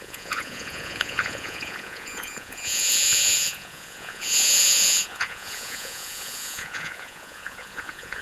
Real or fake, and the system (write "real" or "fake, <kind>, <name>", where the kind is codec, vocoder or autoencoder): fake, vocoder, Vocos